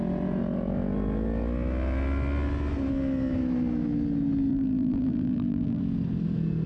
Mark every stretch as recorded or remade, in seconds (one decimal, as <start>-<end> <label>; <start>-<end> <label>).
0.0-4.5 recorded; 4.5-5.8 remade; 5.8-6.7 recorded